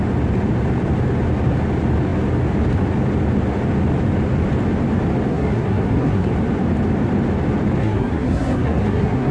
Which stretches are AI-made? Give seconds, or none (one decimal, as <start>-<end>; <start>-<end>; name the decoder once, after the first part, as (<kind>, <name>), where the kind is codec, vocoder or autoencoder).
5.3-6.3 (codec, SNAC); 7.8-9.3